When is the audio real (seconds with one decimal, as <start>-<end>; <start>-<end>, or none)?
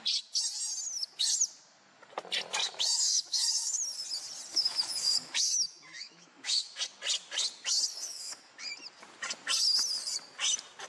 0.0-2.6; 3.8-4.5; 6.8-7.9; 8.6-10.9